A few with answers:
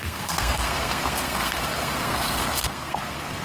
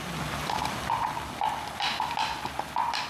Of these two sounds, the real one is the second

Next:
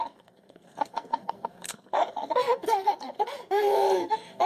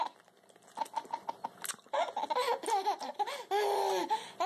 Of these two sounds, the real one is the second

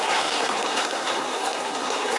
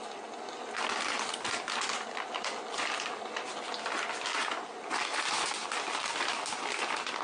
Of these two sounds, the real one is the second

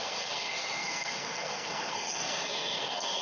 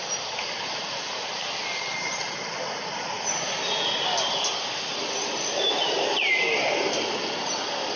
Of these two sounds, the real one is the second